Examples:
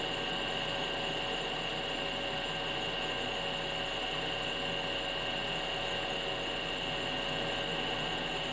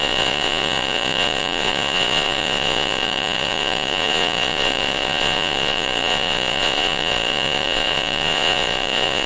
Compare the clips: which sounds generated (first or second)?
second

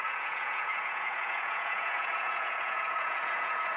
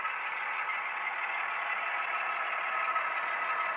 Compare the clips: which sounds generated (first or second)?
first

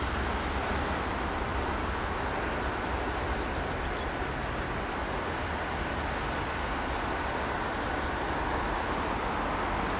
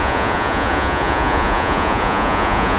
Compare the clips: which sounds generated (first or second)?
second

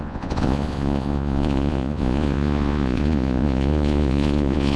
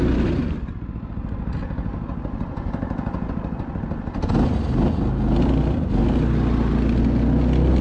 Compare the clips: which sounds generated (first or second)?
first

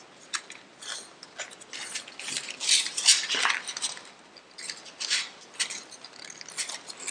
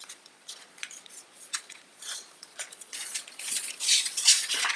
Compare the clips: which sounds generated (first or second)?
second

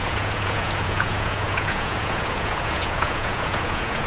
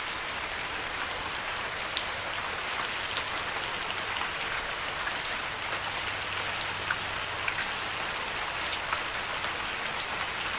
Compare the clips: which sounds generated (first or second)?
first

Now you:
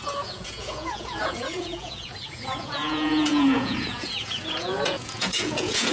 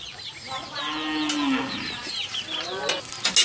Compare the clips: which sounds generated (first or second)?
first